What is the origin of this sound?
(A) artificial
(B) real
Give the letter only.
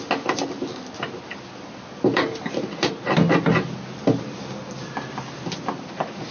B